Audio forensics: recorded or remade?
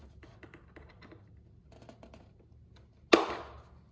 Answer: recorded